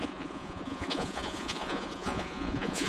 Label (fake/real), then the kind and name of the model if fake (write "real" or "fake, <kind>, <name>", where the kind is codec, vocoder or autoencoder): fake, vocoder, Vocos